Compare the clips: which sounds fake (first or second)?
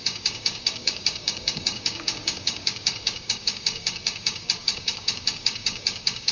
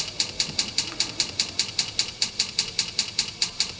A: first